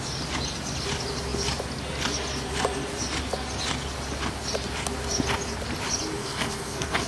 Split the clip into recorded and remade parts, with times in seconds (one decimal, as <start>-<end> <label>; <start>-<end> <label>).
0.0-6.2 recorded; 6.2-7.1 remade